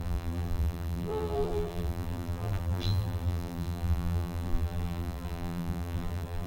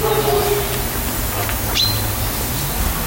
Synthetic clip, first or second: first